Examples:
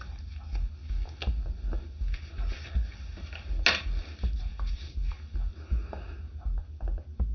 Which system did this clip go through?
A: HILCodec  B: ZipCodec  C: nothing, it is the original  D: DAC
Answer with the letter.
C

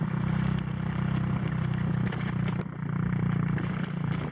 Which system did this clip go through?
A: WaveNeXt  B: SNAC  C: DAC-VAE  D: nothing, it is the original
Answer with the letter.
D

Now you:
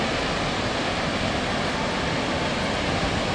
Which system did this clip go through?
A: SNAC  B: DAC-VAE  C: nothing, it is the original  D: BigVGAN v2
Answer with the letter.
C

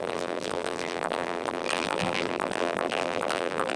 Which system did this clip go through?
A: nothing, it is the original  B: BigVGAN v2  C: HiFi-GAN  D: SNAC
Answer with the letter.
B